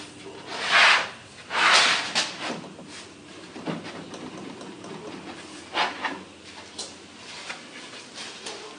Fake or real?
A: real